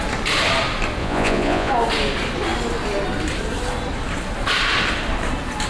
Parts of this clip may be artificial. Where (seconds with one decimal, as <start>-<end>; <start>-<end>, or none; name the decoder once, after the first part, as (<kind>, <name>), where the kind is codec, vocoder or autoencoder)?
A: 1.0-1.7 (vocoder, Vocos)

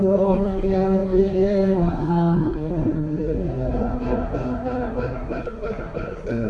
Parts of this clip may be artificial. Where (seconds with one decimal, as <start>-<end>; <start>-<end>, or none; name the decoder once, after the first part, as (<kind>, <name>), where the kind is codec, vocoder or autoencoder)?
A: 0.0-6.5 (codec, SNAC)

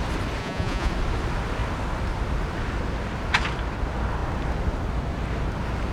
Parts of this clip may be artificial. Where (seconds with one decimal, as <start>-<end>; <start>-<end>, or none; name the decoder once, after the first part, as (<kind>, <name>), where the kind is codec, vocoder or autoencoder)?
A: 0.4-0.9 (vocoder, Vocos)

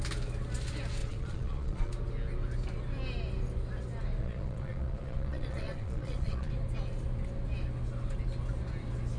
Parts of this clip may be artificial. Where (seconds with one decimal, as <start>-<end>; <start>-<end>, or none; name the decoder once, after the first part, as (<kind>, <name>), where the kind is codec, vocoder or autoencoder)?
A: 1.0-1.9 (vocoder, Vocos); 4.2-6.5